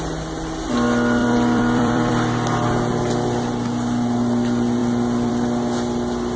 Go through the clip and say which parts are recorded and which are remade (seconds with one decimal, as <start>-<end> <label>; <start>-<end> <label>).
0.0-1.2 recorded; 1.2-2.1 remade; 2.1-6.4 recorded